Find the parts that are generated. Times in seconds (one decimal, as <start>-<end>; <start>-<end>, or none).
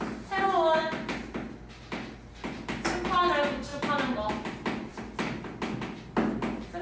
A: none